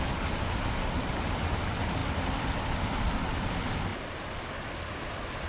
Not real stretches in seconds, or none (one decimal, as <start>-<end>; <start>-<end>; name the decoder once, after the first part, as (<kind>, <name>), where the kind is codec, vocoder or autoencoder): none